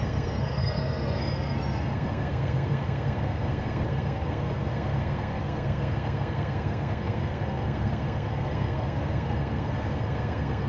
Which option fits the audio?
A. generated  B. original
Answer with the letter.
A